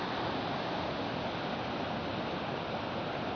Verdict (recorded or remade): recorded